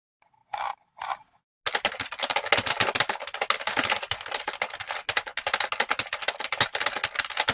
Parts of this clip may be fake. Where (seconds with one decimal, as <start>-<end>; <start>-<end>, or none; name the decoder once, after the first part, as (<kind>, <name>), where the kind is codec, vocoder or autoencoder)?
none